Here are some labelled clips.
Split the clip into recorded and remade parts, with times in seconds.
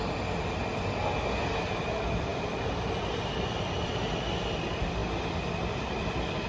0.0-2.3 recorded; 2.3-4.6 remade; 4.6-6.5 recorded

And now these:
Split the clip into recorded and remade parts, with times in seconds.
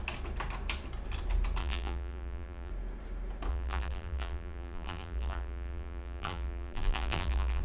0.0-1.6 recorded; 1.6-2.7 remade; 2.7-3.5 recorded; 3.5-7.6 remade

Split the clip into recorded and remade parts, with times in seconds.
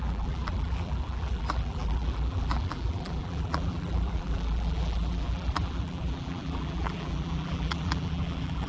0.0-8.7 remade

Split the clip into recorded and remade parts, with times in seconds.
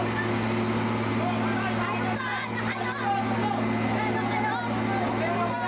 0.0-5.7 recorded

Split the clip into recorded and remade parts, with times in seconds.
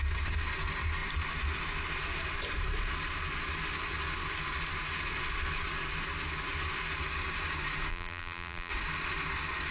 0.0-7.9 recorded; 7.9-8.7 remade; 8.7-9.7 recorded